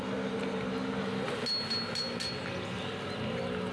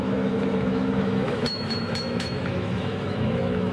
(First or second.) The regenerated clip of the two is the second